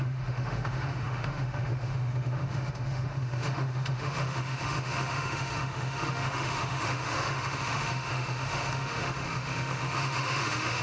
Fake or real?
fake